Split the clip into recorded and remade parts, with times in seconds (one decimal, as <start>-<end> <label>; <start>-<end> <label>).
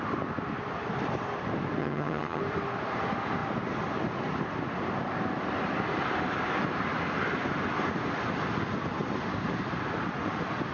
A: 0.0-1.8 recorded; 1.8-2.4 remade; 2.4-10.7 recorded